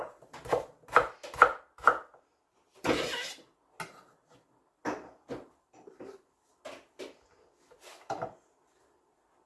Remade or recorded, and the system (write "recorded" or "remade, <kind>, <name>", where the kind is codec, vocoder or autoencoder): recorded